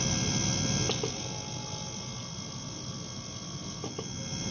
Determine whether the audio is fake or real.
real